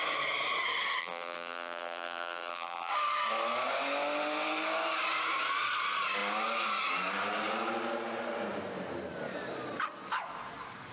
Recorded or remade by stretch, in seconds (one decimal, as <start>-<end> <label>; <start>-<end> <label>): 0.0-1.0 recorded; 1.0-2.9 remade; 2.9-10.9 recorded